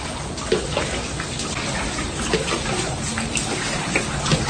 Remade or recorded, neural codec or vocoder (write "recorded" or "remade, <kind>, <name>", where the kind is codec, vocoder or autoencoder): recorded